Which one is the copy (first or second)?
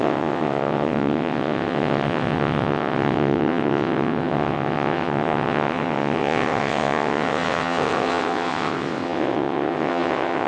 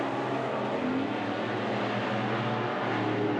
first